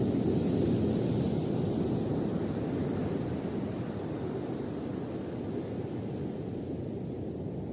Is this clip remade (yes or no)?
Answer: no